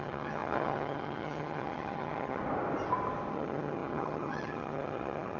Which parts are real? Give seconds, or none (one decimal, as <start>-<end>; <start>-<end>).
2.4-3.3